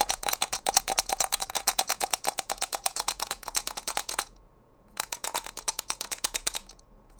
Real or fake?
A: fake